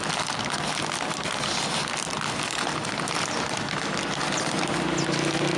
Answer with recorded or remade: recorded